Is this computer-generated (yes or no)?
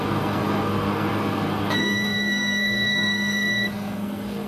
yes